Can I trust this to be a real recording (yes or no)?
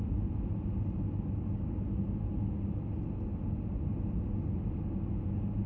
yes